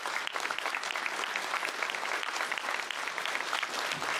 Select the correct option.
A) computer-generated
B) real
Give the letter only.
B